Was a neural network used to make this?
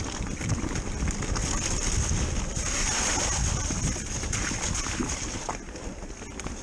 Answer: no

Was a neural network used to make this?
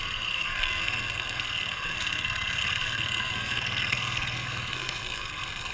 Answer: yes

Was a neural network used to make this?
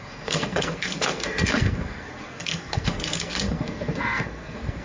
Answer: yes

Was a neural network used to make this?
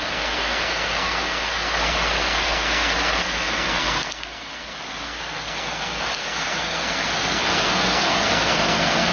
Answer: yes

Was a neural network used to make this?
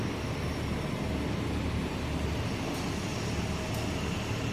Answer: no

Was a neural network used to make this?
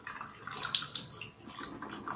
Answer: no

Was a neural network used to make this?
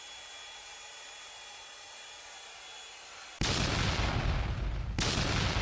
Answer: no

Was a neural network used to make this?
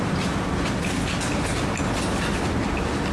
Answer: no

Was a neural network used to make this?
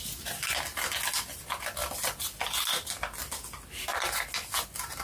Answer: no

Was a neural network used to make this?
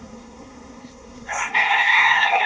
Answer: yes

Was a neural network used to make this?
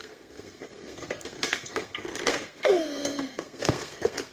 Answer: yes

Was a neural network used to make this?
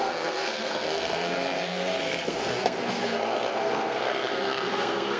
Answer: yes